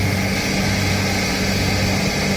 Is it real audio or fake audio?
real